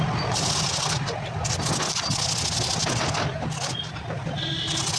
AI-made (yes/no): no